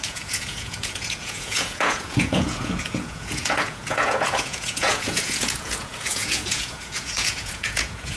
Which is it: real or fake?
fake